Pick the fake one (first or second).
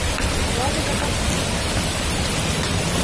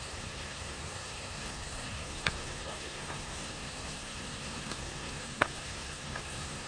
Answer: second